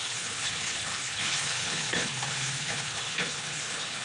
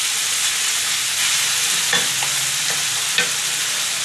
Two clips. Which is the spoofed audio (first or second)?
first